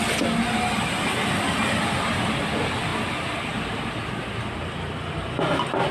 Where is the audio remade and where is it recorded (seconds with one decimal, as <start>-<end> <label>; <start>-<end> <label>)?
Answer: 0.0-5.9 recorded